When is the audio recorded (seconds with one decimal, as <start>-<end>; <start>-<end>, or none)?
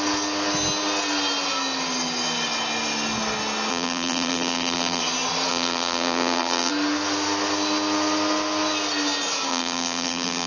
0.0-3.7; 5.0-5.5; 6.7-9.5